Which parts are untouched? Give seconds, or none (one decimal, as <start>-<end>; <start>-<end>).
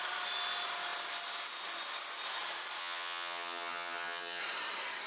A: 0.0-2.8; 4.4-5.1